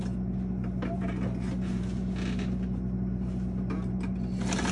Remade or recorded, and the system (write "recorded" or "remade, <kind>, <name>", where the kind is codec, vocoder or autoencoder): recorded